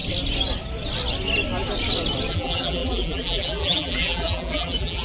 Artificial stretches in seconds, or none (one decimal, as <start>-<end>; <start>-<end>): 2.3-5.0